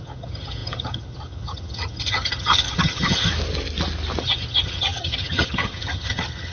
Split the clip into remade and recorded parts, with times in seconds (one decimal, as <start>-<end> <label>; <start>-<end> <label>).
0.0-3.3 remade; 3.3-4.2 recorded; 4.2-6.5 remade